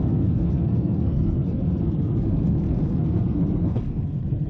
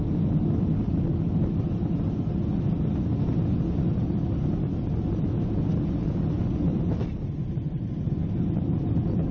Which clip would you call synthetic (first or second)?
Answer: first